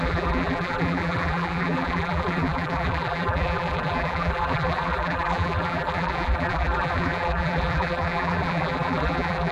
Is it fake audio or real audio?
fake